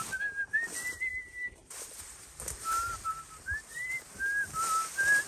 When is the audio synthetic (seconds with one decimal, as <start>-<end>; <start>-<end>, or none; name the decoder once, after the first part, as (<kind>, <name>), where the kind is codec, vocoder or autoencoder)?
1.1-3.9 (vocoder, BigVGAN v2)

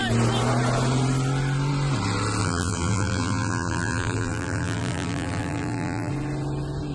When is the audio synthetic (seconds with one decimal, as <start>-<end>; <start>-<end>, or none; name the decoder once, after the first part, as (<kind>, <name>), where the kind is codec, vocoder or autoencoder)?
2.4-6.1 (vocoder, BigVGAN v2)

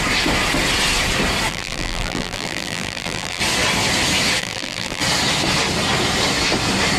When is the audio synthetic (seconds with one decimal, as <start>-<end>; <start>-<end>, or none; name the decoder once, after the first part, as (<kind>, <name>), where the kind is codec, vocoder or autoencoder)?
1.5-3.4 (vocoder, BigVGAN v2); 4.4-5.0